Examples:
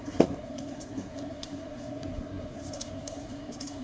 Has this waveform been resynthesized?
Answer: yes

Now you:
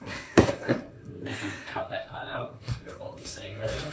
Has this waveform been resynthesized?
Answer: yes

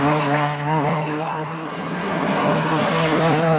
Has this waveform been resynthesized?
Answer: yes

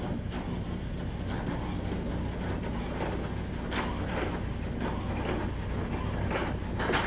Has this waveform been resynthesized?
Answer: no